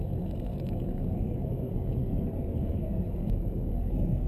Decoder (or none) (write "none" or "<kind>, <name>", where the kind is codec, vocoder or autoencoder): codec, SNAC